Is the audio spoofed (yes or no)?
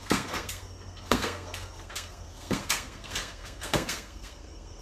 yes